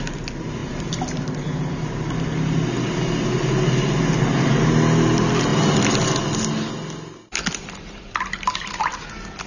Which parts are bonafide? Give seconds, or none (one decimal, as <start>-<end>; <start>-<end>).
0.0-9.5